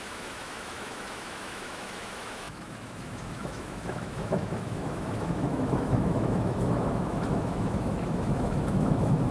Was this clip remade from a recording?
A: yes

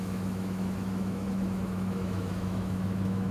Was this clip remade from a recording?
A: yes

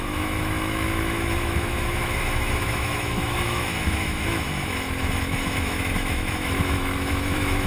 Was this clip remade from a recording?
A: yes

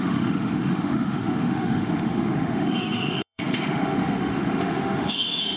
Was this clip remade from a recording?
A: yes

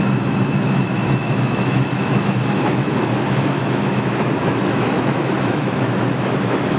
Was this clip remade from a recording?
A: yes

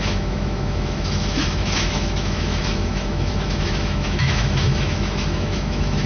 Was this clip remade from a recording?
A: yes